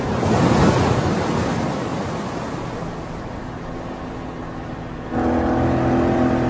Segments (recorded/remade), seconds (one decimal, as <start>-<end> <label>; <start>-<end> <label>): 0.0-6.5 recorded

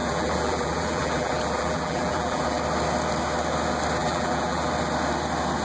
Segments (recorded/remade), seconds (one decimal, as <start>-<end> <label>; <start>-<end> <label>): 0.0-2.6 remade; 2.6-4.0 recorded; 4.0-4.7 remade; 4.7-5.6 recorded

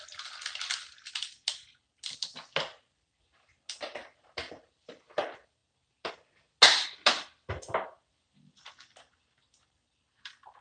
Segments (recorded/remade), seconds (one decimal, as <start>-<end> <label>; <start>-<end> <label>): 0.0-10.6 recorded

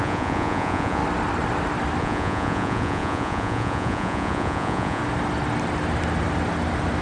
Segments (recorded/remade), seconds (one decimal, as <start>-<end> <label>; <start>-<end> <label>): 0.0-1.0 remade; 1.0-2.0 recorded; 2.0-5.0 remade; 5.0-7.0 recorded

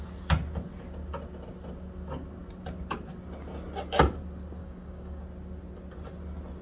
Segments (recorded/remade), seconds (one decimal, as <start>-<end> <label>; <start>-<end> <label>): 0.0-4.6 recorded; 4.6-5.2 remade; 5.2-6.6 recorded

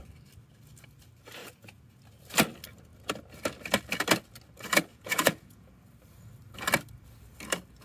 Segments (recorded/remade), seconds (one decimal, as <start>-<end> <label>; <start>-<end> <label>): 0.0-1.4 recorded; 1.4-2.0 remade; 2.0-4.9 recorded; 4.9-5.7 remade; 5.7-7.8 recorded

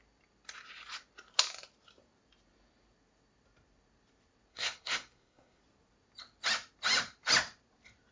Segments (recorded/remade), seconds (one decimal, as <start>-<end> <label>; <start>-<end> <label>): 0.0-4.5 recorded; 4.5-5.6 remade; 5.6-8.1 recorded

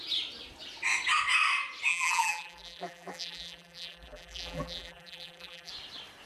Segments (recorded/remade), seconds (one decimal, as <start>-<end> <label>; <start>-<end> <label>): 0.0-1.9 recorded; 1.9-5.7 remade; 5.7-6.3 recorded